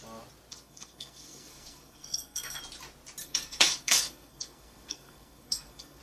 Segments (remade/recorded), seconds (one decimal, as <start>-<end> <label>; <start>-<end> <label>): 0.0-0.5 recorded; 0.5-2.6 remade; 2.6-3.2 recorded; 3.2-6.0 remade